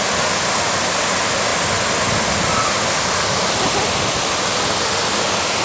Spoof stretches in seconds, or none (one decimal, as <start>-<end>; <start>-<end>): none